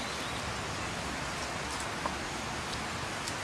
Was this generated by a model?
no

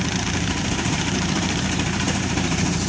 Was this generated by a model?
yes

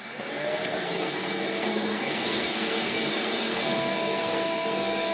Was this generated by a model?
yes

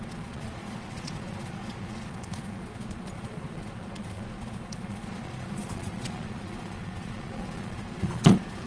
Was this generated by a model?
yes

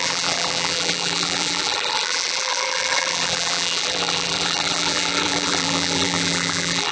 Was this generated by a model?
yes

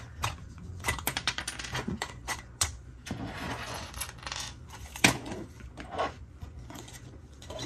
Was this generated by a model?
yes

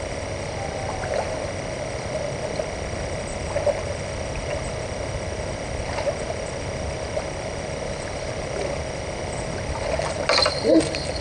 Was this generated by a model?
no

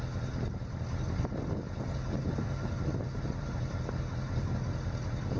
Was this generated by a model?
no